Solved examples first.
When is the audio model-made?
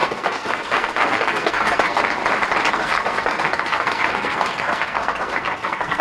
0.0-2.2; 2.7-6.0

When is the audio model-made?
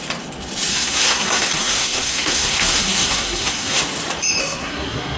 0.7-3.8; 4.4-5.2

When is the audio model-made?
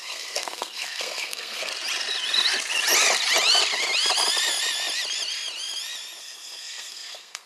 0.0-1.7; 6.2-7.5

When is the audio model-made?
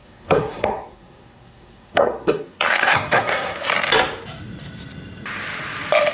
0.0-3.7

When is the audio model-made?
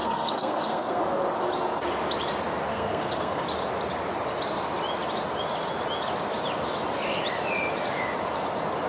0.0-1.0; 2.7-3.4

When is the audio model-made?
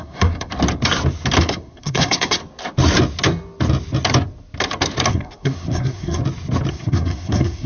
0.0-0.5; 1.4-2.4; 5.1-6.2; 6.7-7.7